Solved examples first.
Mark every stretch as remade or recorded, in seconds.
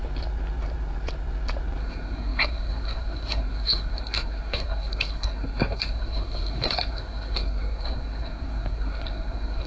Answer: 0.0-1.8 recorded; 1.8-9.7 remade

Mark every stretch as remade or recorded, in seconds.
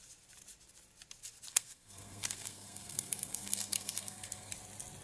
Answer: 0.0-1.5 recorded; 1.5-4.5 remade; 4.5-5.0 recorded